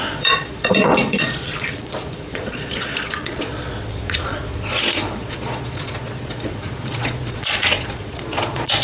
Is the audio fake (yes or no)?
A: yes